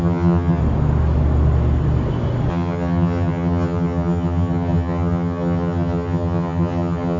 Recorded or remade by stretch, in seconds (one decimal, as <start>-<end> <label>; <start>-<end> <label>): 0.0-0.6 remade; 0.6-2.5 recorded; 2.5-7.2 remade